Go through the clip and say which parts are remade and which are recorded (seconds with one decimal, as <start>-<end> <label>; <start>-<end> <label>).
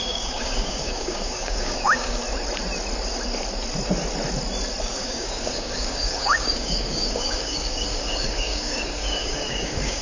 0.0-2.2 remade; 2.2-4.8 recorded; 4.8-10.0 remade